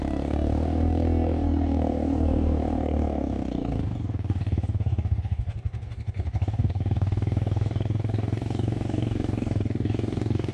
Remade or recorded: remade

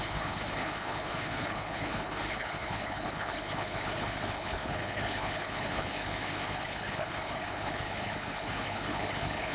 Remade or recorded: remade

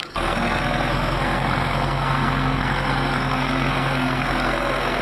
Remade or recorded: remade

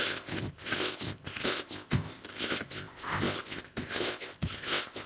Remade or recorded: remade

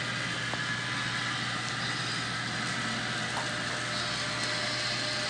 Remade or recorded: recorded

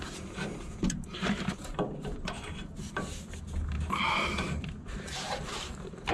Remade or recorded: remade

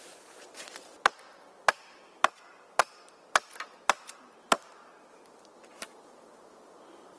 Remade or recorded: recorded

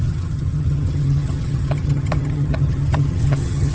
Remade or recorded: remade